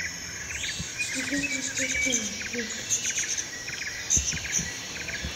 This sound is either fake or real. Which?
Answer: real